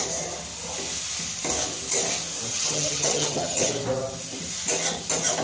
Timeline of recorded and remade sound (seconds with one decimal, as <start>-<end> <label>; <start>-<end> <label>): 0.0-2.5 recorded; 2.5-3.7 remade; 3.7-5.4 recorded

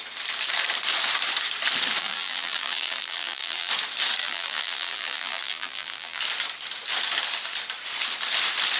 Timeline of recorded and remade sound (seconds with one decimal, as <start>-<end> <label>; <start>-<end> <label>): 0.0-2.0 recorded; 2.0-3.7 remade; 3.7-4.2 recorded; 4.2-6.2 remade; 6.2-8.8 recorded

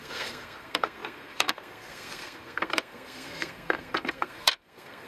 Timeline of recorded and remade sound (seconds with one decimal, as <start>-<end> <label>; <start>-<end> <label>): 0.0-5.1 remade

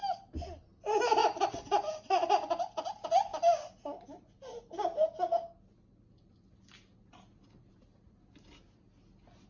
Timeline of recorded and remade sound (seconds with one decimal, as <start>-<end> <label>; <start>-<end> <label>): 0.0-9.5 recorded

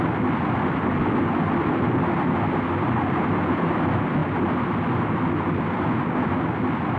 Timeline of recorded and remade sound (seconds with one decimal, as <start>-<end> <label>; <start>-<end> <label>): 0.0-7.0 recorded

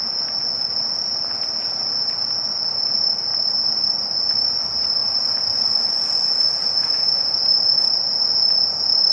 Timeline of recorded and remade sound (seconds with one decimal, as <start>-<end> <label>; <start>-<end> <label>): 0.0-3.3 recorded; 3.3-3.9 remade; 3.9-5.0 recorded; 5.0-5.9 remade; 5.9-9.1 recorded